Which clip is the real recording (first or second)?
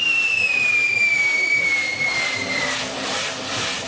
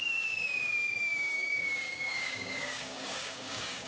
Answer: first